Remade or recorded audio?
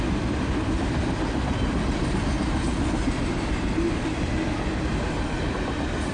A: recorded